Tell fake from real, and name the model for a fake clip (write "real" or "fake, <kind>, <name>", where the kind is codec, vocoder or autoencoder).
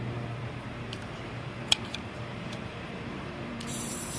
fake, vocoder, BigVGAN v2